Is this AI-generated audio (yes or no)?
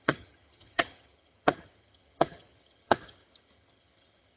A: yes